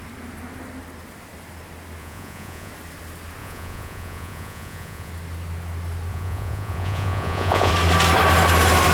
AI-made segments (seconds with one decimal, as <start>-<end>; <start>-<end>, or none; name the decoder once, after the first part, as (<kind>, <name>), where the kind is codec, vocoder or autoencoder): 2.0-2.7 (vocoder, Vocos); 3.4-5.1; 6.1-7.7